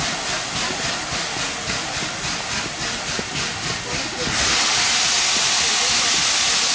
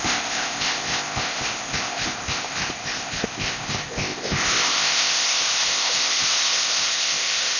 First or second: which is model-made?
second